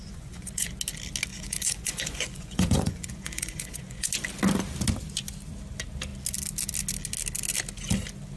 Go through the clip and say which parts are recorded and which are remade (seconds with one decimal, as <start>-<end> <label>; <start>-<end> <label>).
0.0-0.7 remade; 0.7-1.3 recorded; 1.3-4.1 remade; 4.1-8.4 recorded